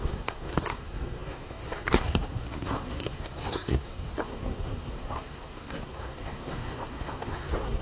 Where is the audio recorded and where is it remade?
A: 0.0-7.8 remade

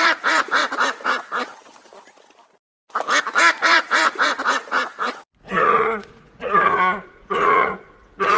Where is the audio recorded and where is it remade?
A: 0.0-1.9 remade; 1.9-3.4 recorded; 3.4-8.4 remade